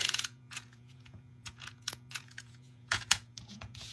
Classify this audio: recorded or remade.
remade